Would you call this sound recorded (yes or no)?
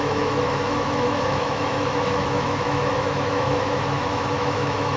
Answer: no